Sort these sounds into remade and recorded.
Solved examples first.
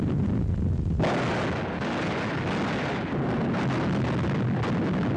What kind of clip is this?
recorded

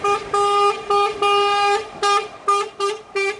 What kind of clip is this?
recorded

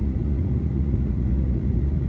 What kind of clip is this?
remade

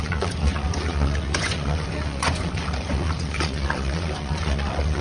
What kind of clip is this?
remade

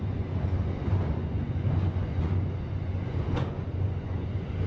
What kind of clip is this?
remade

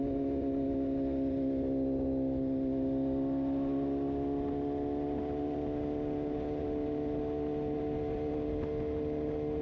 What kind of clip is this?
recorded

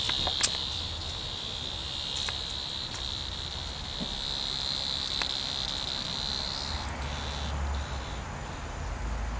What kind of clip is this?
recorded